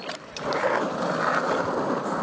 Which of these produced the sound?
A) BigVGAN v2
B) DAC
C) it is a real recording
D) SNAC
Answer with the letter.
C